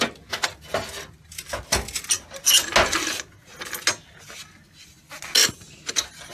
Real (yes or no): yes